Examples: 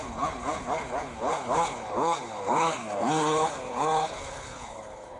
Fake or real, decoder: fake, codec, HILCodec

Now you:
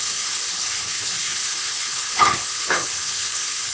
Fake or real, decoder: fake, codec, HILCodec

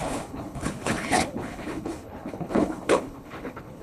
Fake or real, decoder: fake, codec, HILCodec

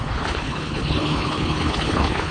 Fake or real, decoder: fake, codec, HILCodec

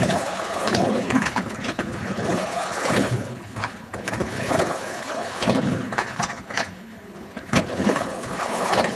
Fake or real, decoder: fake, codec, HILCodec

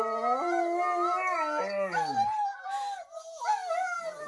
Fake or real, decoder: real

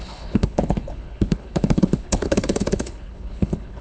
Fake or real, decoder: fake, codec, HILCodec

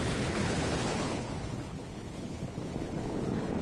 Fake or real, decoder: fake, codec, HILCodec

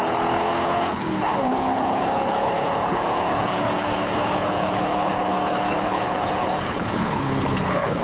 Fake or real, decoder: fake, codec, HILCodec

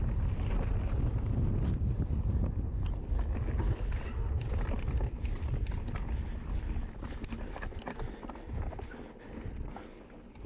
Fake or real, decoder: real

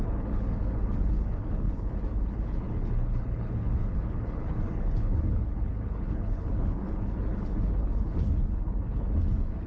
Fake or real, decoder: fake, codec, HILCodec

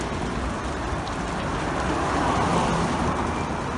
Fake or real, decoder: real